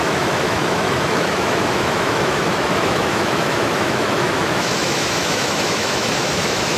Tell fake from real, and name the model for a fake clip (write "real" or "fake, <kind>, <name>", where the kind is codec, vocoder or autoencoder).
fake, autoencoder, DAC-VAE